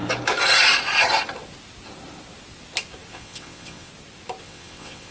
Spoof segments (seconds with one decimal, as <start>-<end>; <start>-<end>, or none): 3.1-3.9; 4.4-5.1